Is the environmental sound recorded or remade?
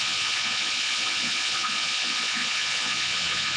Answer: remade